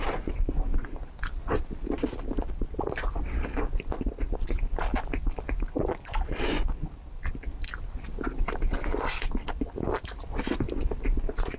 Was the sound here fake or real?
real